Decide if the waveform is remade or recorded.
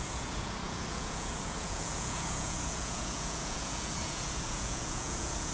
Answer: remade